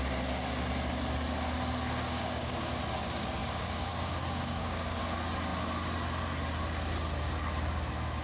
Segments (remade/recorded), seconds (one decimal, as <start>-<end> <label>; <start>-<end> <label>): 0.0-2.1 recorded; 2.1-2.8 remade; 2.8-3.4 recorded; 3.4-5.0 remade; 5.0-8.2 recorded